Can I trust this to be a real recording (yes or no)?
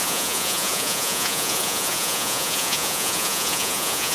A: no